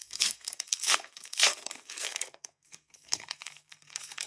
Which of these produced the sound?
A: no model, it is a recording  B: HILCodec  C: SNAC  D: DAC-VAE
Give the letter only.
C